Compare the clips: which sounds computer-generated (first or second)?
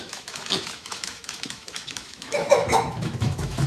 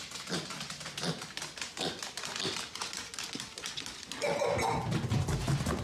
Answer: first